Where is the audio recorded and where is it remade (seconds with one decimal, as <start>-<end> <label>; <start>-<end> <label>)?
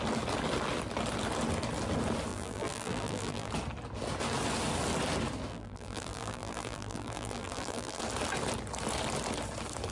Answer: 0.0-2.3 recorded; 2.3-3.5 remade; 3.5-5.5 recorded; 5.5-8.0 remade; 8.0-9.9 recorded